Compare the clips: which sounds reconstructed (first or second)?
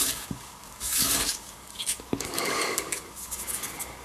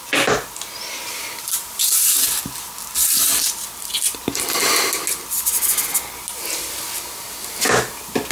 first